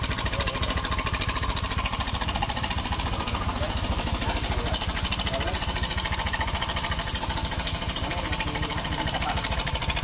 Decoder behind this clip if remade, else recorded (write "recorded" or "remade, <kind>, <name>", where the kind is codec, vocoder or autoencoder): recorded